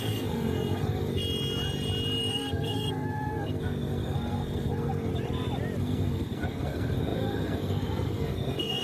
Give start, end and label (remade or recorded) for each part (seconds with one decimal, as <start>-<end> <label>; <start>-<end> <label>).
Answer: 0.0-1.2 remade; 1.2-2.3 recorded; 2.3-5.1 remade; 5.1-5.8 recorded; 5.8-8.8 remade